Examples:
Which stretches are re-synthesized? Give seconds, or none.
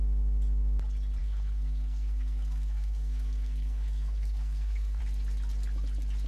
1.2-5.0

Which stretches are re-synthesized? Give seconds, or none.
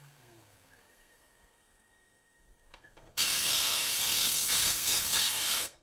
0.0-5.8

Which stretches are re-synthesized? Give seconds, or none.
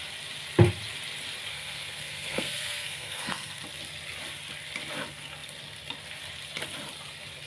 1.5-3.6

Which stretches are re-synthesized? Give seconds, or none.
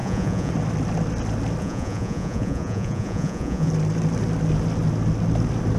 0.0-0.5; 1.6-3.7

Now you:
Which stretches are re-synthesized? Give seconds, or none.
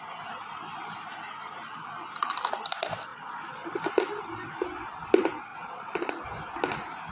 3.1-3.8; 5.5-6.1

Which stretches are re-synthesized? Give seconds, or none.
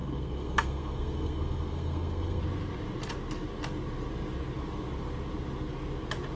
0.0-2.4